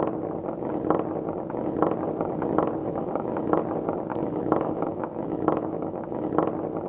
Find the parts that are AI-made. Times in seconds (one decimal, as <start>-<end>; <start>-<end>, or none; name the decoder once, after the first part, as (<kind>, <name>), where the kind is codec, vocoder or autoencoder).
2.8-3.6 (autoencoder, DAC-VAE); 4.1-6.3